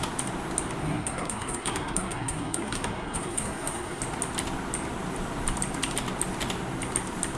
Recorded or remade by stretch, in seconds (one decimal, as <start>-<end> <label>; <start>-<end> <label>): 0.0-0.8 recorded; 0.8-4.0 remade; 4.0-7.4 recorded